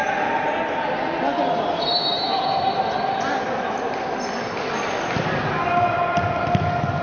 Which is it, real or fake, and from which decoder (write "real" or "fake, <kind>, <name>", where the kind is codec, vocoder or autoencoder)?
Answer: real